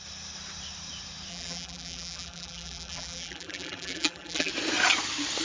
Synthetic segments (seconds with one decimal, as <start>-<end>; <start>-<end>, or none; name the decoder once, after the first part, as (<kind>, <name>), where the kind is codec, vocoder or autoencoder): 1.3-4.5 (vocoder, BigVGAN v2)